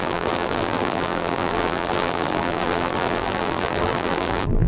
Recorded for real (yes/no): no